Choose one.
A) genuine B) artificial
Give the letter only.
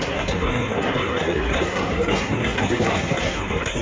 B